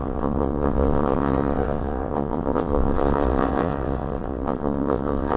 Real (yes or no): no